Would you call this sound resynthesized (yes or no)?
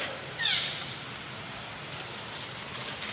no